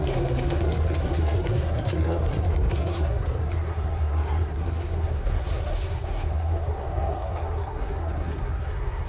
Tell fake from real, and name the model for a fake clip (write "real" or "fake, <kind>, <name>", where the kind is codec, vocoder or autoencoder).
fake, codec, SNAC